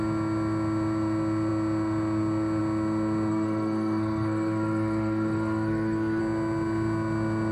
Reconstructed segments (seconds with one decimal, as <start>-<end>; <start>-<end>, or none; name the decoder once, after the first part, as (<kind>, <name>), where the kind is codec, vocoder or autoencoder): 3.3-6.2 (codec, SNAC)